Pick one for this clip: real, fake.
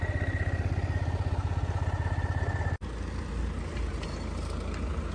real